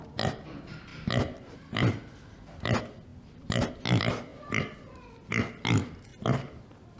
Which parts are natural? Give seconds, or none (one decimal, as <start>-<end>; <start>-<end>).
0.0-3.1; 3.7-7.0